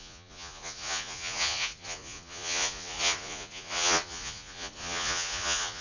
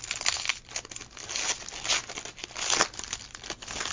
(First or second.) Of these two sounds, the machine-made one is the first